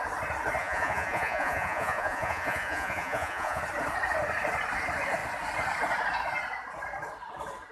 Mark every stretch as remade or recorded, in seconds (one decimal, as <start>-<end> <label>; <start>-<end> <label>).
0.0-0.6 recorded; 0.6-3.6 remade; 3.6-7.7 recorded